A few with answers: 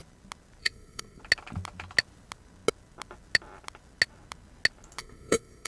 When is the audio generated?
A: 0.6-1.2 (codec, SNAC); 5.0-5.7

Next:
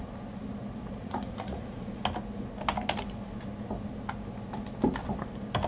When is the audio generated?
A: 1.0-2.0 (vocoder, Vocos)

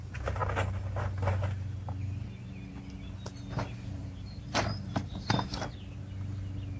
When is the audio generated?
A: 0.0-0.4 (vocoder, BigVGAN v2); 3.9-5.5

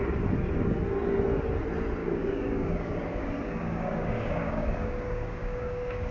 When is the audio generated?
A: 2.0-6.1 (codec, DAC)

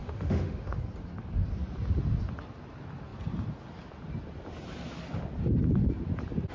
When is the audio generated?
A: 0.0-0.8 (autoencoder, DAC-VAE)

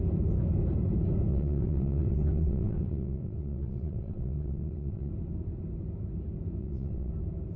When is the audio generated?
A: 1.3-5.1 (vocoder, WaveNeXt); 6.6-7.1

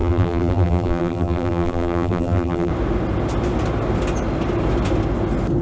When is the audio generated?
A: 0.0-2.7 (vocoder, BigVGAN v2)